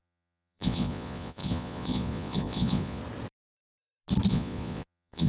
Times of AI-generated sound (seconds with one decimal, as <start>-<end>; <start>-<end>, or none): 0.0-3.0; 4.3-5.3